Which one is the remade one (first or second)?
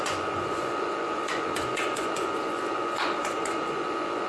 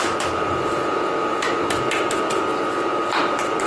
first